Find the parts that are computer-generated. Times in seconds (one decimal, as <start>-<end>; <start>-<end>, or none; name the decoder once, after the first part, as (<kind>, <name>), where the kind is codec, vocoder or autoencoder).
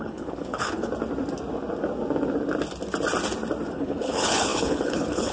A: 0.0-0.9 (codec, HILCodec); 3.7-5.3